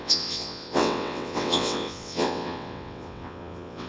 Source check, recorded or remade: remade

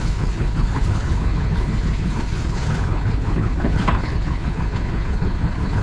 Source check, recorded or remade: remade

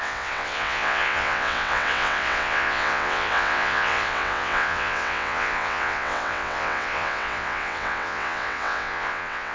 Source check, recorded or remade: remade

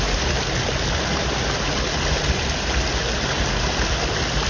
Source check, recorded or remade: recorded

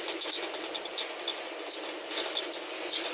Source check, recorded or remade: recorded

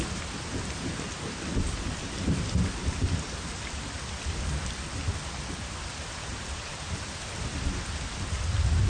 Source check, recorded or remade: recorded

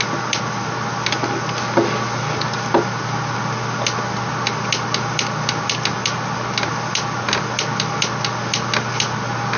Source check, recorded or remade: recorded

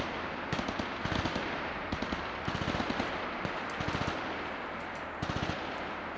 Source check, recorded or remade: recorded